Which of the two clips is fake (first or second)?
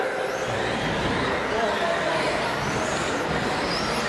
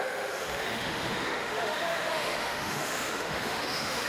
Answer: second